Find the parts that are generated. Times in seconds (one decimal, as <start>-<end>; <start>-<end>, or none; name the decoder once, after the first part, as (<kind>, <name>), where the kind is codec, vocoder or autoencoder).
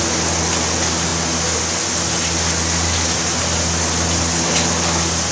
none